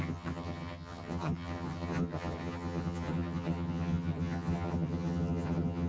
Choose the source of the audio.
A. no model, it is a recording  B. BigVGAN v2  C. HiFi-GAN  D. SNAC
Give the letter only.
C